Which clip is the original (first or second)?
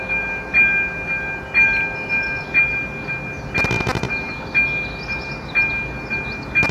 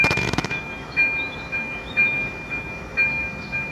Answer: first